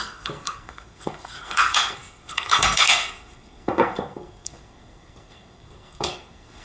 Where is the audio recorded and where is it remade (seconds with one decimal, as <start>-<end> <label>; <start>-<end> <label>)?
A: 0.0-6.6 remade